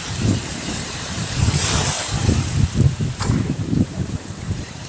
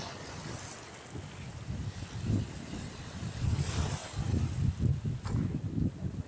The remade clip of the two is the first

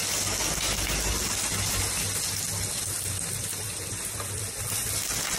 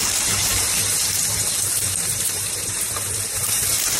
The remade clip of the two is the second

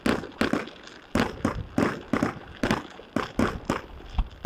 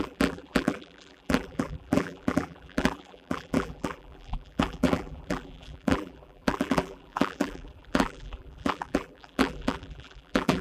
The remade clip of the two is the second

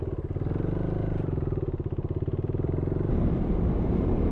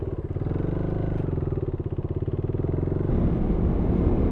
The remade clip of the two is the first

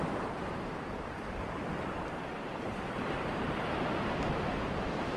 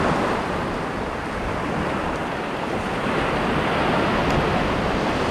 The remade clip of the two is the first